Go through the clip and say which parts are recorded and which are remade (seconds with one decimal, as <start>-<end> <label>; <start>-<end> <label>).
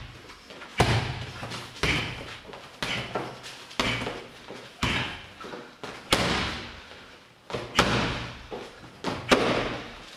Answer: 0.0-0.7 recorded; 0.7-2.4 remade; 2.4-10.2 recorded